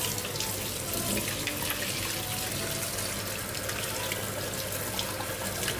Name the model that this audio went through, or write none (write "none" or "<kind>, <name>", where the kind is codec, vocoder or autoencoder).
none